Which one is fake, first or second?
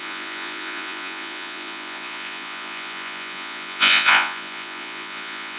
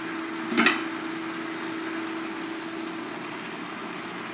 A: first